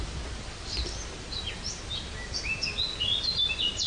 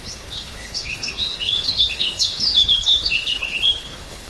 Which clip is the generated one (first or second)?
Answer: second